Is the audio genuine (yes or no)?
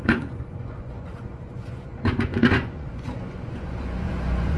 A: no